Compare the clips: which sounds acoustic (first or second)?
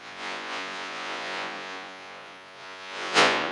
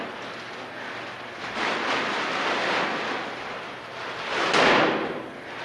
second